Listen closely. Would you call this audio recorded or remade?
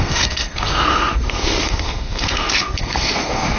remade